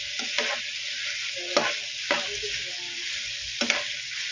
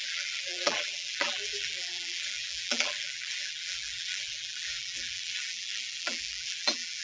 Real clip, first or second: first